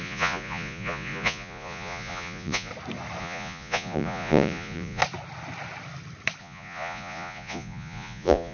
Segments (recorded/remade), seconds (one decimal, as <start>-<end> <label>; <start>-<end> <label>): 0.0-2.7 remade; 2.7-3.2 recorded; 3.2-5.0 remade; 5.0-6.4 recorded; 6.4-8.5 remade